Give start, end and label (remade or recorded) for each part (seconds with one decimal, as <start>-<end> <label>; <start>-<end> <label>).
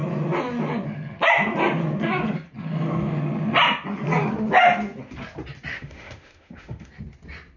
0.0-5.7 recorded; 5.7-6.9 remade; 6.9-7.6 recorded